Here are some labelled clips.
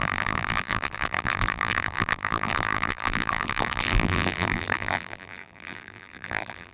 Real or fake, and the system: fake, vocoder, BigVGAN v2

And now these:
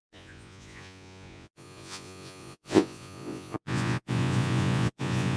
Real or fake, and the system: fake, vocoder, Vocos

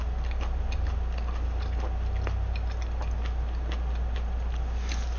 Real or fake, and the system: real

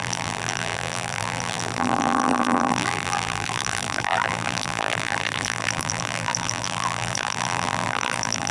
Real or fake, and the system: fake, vocoder, BigVGAN v2